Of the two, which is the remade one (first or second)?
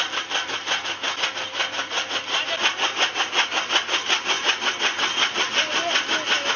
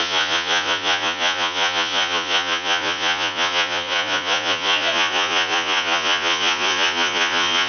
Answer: second